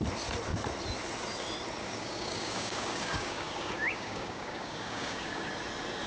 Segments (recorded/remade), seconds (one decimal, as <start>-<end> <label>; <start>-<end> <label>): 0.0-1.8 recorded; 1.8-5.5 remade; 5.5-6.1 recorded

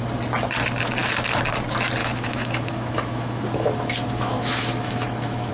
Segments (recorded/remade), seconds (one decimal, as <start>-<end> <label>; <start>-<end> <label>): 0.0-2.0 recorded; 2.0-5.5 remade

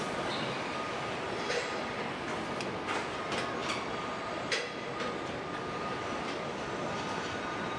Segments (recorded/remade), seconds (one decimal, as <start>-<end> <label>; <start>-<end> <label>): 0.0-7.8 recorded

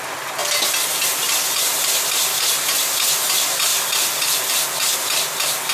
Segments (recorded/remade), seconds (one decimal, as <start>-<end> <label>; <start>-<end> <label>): 0.0-5.7 recorded

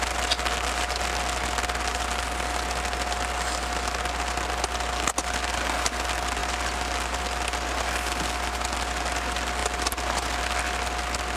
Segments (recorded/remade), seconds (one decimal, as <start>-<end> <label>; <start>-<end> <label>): 0.0-6.4 recorded; 6.4-7.2 remade; 7.2-11.4 recorded

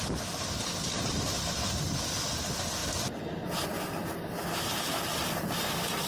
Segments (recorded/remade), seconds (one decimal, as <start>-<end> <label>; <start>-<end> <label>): 0.0-6.1 recorded

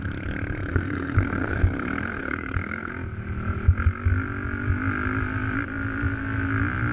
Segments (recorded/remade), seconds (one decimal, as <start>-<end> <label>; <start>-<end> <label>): 0.0-0.7 recorded; 0.7-1.6 remade; 1.6-2.2 recorded; 2.2-2.9 remade; 2.9-6.9 recorded

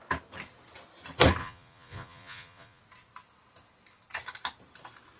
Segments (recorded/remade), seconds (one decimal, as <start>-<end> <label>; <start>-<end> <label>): 0.0-1.4 recorded; 1.4-2.8 remade; 2.8-5.2 recorded